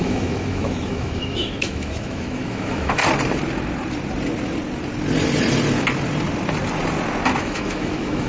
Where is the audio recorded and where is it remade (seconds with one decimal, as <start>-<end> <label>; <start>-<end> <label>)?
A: 0.0-3.0 remade; 3.0-7.4 recorded; 7.4-8.3 remade